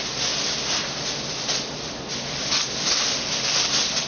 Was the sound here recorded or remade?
recorded